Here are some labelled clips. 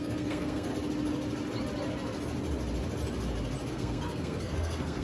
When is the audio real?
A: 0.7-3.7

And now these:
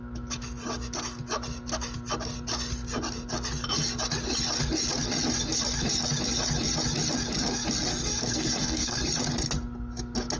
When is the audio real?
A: 0.0-7.9; 9.0-10.4